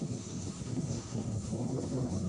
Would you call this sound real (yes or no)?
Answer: no